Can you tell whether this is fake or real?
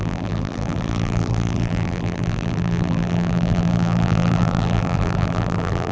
fake